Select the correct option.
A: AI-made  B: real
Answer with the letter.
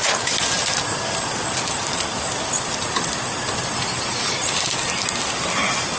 B